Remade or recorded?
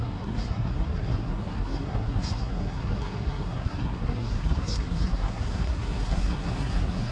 remade